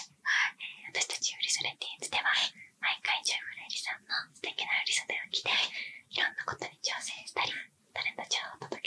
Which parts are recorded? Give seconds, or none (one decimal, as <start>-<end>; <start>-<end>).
0.0-8.9